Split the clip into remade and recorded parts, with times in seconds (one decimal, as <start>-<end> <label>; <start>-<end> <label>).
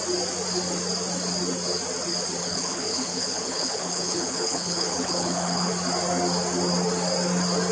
0.0-2.4 recorded; 2.4-5.7 remade; 5.7-7.7 recorded